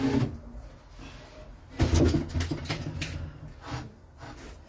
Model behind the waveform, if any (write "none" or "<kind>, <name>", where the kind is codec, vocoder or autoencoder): none